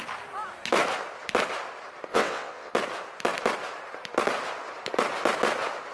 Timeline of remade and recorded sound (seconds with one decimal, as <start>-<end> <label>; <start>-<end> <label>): 0.0-2.1 recorded; 2.1-2.7 remade; 2.7-5.9 recorded